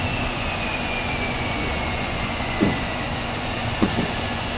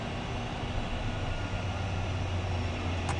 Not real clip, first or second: first